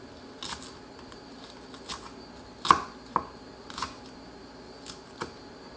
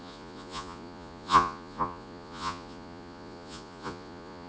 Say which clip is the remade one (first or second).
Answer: second